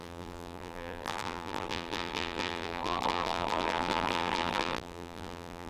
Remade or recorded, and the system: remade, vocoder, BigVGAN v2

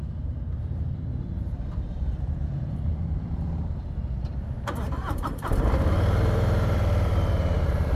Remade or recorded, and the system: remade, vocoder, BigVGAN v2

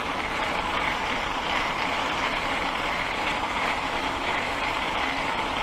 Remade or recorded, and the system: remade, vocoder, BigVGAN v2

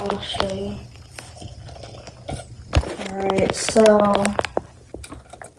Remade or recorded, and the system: recorded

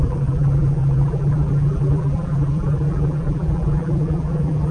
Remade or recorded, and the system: remade, vocoder, BigVGAN v2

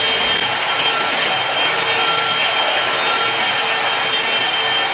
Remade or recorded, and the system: recorded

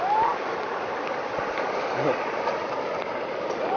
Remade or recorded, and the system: recorded